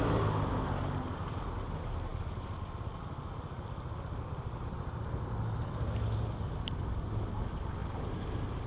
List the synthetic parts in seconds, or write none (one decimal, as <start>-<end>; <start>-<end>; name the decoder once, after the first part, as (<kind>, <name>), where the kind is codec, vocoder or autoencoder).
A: none